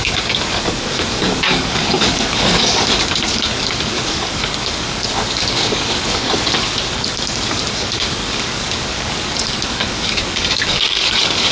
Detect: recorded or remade remade